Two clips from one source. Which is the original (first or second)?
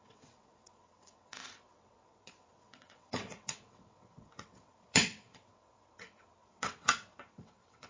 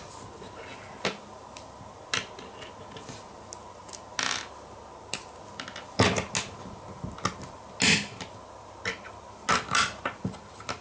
second